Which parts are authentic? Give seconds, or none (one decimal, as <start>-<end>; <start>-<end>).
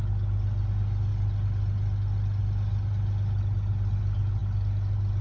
0.0-5.2